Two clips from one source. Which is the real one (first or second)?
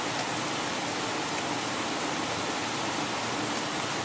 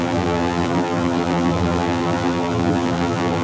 first